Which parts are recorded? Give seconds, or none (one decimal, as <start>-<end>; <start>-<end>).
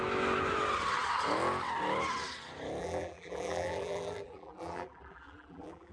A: 0.0-2.8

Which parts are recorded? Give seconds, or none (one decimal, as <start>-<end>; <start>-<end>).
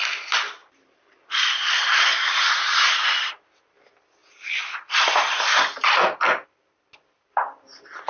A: 0.0-0.6; 3.3-4.2; 5.1-5.8; 7.2-8.1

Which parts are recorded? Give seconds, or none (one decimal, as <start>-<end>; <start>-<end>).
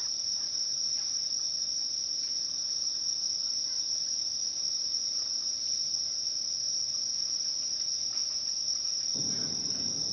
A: none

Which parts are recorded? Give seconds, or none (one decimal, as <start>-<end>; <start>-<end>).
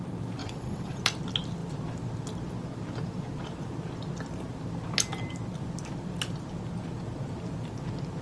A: 0.0-0.4; 1.0-8.2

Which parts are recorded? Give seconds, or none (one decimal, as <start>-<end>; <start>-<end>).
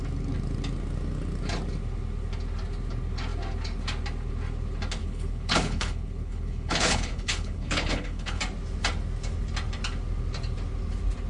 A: 0.0-5.0; 8.4-11.3